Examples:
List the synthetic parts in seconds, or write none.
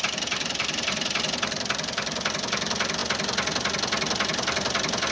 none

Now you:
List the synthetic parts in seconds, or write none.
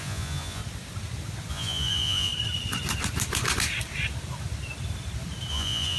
0.0-0.6 (vocoder, Vocos); 1.5-2.3; 5.5-6.0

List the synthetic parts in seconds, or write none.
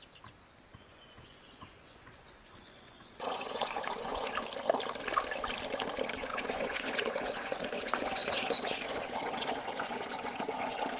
0.7-4.3 (vocoder, Vocos); 6.3-11.0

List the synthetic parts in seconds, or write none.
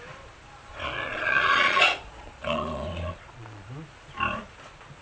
0.7-3.7 (vocoder, Vocos)